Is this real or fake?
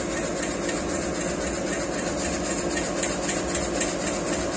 real